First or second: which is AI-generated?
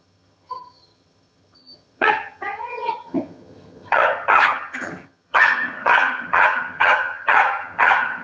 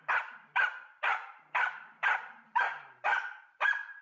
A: first